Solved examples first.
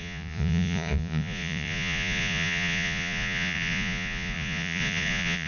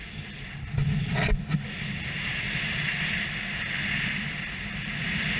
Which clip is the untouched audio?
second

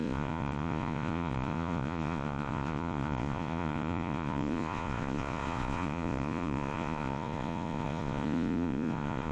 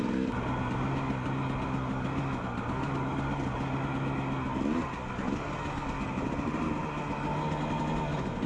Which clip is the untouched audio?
second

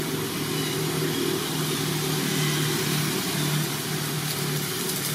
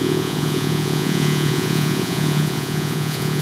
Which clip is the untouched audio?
first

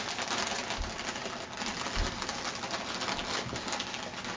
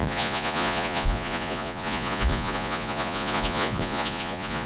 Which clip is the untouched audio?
first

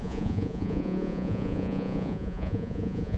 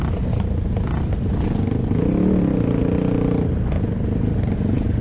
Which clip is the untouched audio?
second